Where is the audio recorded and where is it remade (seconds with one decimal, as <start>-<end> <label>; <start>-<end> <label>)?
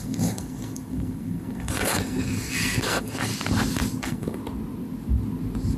0.0-3.3 remade; 3.3-4.0 recorded; 4.0-4.4 remade; 4.4-5.8 recorded